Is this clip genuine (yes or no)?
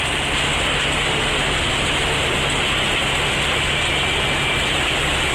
yes